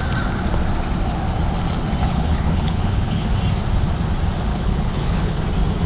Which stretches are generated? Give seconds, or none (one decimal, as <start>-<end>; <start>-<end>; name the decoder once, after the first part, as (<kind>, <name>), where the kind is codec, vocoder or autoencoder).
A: 2.0-3.3 (codec, HILCodec); 4.5-5.4